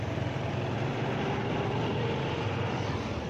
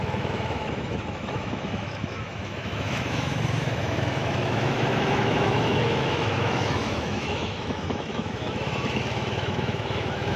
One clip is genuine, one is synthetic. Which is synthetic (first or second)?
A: second